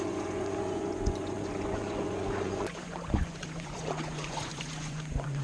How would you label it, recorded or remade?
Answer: remade